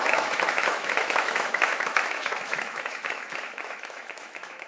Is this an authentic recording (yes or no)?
no